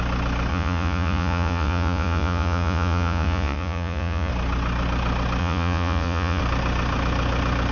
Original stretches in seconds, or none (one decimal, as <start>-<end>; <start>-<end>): 0.0-0.5; 4.3-5.4; 6.4-7.7